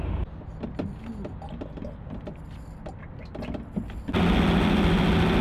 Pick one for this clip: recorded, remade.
recorded